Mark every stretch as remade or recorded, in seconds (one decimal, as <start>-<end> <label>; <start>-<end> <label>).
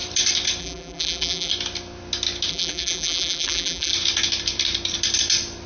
0.0-0.6 recorded; 0.6-1.5 remade; 1.5-2.5 recorded; 2.5-3.9 remade; 3.9-5.7 recorded